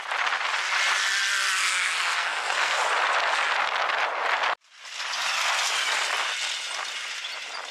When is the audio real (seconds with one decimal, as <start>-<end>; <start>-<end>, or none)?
0.0-1.6; 2.8-7.7